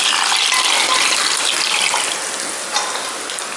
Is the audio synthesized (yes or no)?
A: no